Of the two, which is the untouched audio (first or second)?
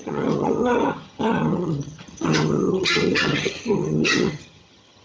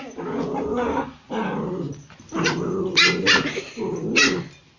second